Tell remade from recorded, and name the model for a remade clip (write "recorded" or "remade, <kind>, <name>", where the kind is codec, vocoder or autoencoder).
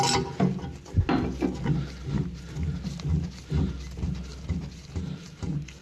recorded